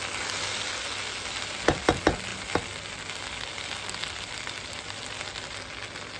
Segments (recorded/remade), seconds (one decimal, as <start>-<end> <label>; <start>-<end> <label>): 0.0-6.2 recorded